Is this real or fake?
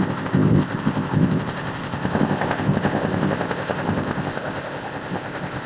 fake